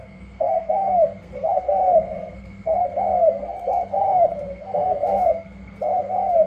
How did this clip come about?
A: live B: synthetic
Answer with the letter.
B